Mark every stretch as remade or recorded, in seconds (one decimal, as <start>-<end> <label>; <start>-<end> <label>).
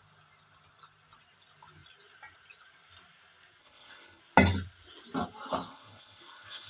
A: 0.0-3.6 recorded; 3.6-4.2 remade; 4.2-5.7 recorded; 5.7-6.7 remade